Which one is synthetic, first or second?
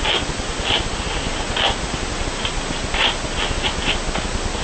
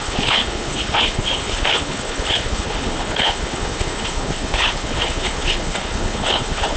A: second